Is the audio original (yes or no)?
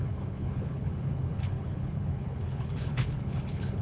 no